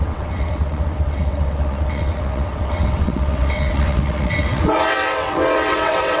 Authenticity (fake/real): fake